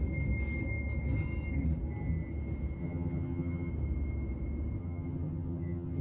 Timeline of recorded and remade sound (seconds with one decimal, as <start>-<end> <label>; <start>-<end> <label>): 0.0-2.8 recorded; 2.8-3.7 remade; 3.7-4.8 recorded; 4.8-6.0 remade